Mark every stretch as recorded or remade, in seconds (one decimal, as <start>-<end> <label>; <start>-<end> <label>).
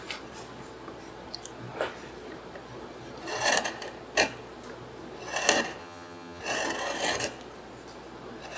0.0-5.8 recorded; 5.8-6.4 remade; 6.4-8.6 recorded